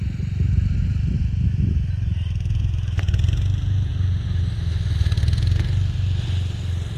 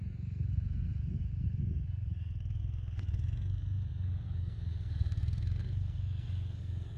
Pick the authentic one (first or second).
first